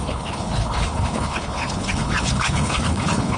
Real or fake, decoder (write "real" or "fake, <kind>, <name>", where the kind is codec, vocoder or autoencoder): fake, codec, HILCodec